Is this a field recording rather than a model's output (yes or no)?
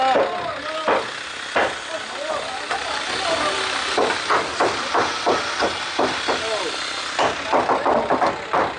yes